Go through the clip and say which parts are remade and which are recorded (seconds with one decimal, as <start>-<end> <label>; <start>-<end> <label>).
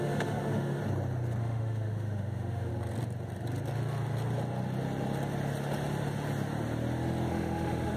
0.0-0.8 remade; 0.8-1.4 recorded; 1.4-2.7 remade; 2.7-7.3 recorded; 7.3-8.0 remade